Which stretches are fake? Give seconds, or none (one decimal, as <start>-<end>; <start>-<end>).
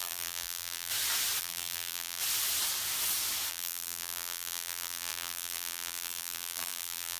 0.0-0.9; 1.4-2.2; 3.5-7.2